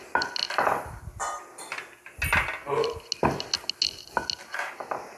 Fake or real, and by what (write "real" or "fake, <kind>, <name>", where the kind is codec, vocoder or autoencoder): real